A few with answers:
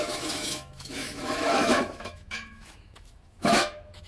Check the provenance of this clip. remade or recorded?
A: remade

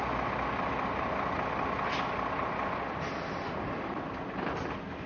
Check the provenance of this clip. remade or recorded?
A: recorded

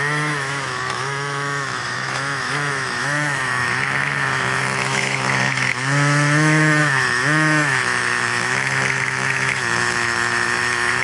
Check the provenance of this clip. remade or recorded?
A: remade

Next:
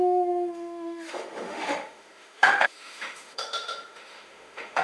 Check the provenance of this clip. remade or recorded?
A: remade